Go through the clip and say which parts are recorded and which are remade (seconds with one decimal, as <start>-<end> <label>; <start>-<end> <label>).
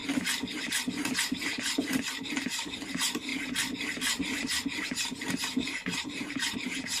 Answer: 0.0-1.9 recorded; 1.9-3.3 remade; 3.3-5.3 recorded; 5.3-7.0 remade